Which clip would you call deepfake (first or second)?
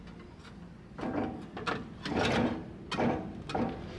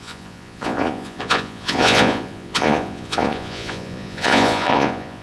second